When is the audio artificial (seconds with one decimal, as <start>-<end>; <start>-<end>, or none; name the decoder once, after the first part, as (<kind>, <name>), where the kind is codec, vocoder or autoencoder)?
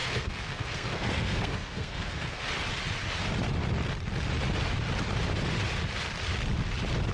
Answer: 0.0-2.4 (codec, SNAC)